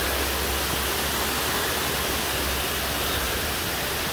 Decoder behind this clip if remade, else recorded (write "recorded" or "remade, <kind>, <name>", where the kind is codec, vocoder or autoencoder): recorded